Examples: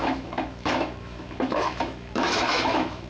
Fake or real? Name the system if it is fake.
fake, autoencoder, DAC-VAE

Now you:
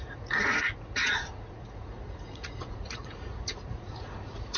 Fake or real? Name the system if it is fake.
fake, vocoder, Vocos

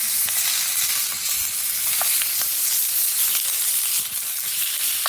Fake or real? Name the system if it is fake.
real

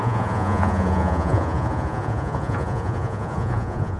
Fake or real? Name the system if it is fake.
fake, vocoder, Vocos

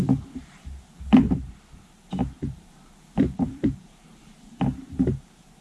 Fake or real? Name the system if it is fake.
fake, vocoder, BigVGAN v2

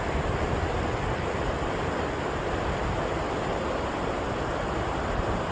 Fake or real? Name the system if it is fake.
fake, vocoder, BigVGAN v2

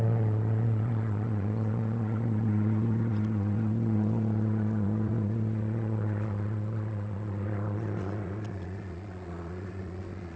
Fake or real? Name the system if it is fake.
fake, vocoder, Vocos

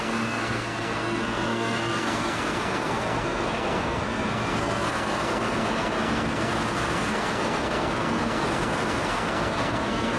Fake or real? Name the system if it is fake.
fake, codec, SNAC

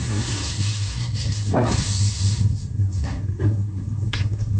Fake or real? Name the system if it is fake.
fake, codec, SNAC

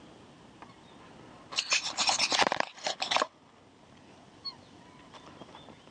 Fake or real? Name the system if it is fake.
real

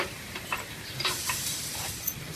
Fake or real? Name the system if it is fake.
fake, vocoder, BigVGAN v2